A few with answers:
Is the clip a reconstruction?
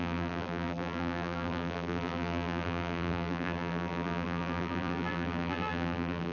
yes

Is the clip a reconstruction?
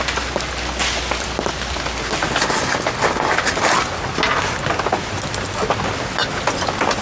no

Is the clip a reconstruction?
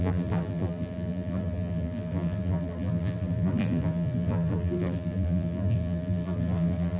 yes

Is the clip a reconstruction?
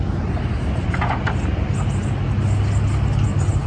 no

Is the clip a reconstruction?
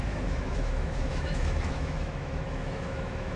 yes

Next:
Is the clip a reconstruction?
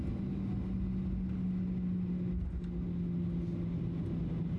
no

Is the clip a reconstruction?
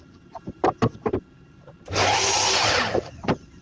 yes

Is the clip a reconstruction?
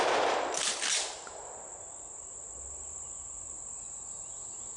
no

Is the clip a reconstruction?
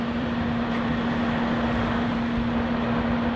yes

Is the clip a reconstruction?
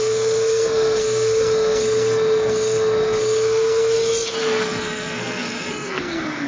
yes